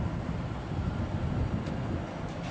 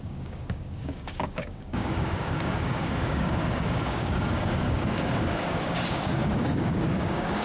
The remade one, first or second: second